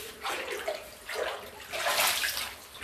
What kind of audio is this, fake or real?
real